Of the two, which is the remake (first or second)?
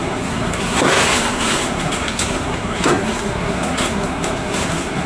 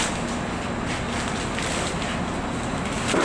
first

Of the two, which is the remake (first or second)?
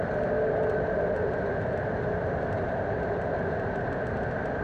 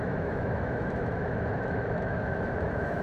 second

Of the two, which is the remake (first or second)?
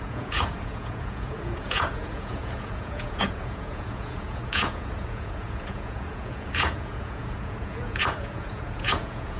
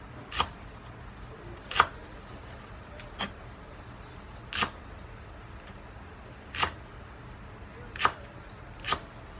first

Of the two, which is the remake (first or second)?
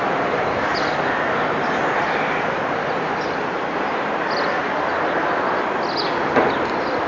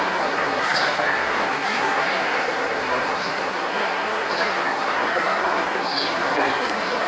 second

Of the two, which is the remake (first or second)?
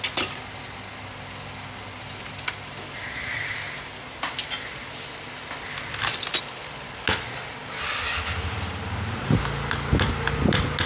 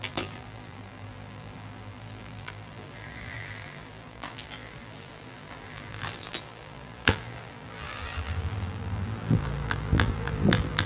second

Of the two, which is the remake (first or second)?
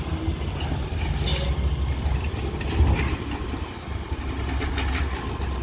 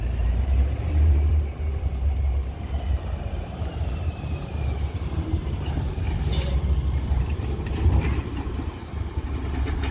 second